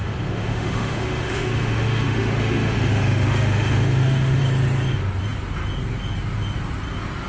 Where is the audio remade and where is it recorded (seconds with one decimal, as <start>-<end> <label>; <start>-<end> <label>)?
0.0-4.4 remade; 4.4-7.3 recorded